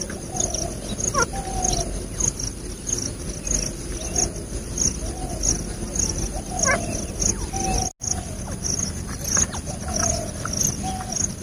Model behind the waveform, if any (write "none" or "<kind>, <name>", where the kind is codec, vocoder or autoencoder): none